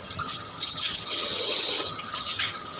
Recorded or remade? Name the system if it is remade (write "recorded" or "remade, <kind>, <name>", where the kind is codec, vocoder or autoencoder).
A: remade, vocoder, HiFi-GAN